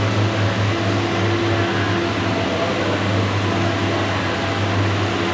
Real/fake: real